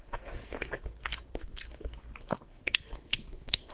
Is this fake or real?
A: fake